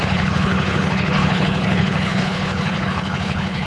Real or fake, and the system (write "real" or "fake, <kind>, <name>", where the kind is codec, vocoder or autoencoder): fake, codec, HILCodec